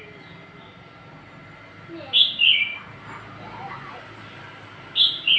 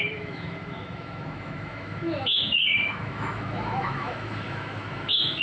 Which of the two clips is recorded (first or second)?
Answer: first